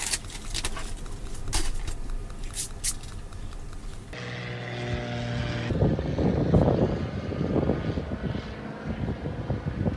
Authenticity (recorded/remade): recorded